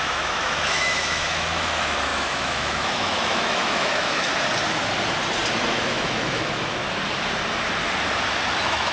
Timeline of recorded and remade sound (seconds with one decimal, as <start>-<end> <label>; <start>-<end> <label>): 0.0-4.3 remade; 4.3-5.7 recorded; 5.7-6.8 remade; 6.8-8.5 recorded; 8.5-8.9 remade